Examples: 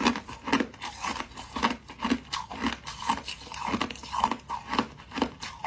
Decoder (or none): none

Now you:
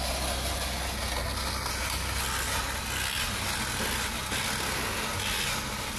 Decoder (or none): none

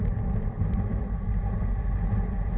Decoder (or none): none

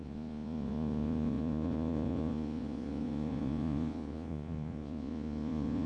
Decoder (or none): vocoder, Vocos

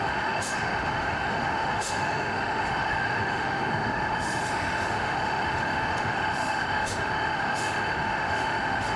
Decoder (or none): autoencoder, DAC-VAE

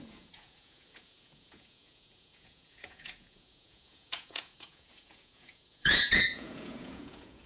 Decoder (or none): vocoder, Vocos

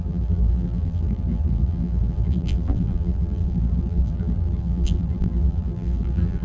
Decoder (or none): vocoder, BigVGAN v2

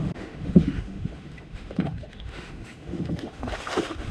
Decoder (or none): autoencoder, DAC-VAE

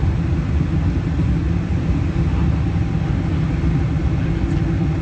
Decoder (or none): none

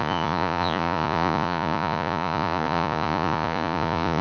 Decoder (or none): vocoder, Vocos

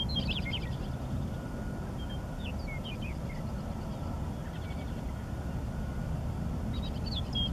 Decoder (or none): none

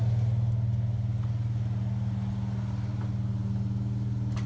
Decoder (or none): none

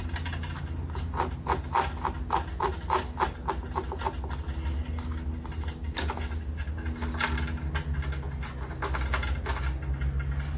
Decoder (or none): none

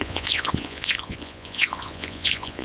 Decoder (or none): vocoder, Vocos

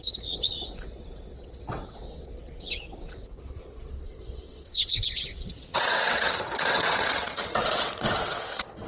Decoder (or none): vocoder, WaveNeXt